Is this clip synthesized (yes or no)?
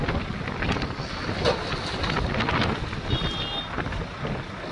no